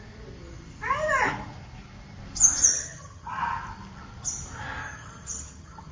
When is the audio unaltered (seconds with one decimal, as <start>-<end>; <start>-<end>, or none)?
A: 0.0-2.7; 3.4-4.8